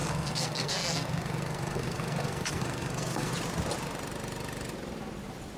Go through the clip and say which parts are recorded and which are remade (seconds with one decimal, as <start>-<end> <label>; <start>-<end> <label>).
0.0-3.3 remade; 3.3-5.6 recorded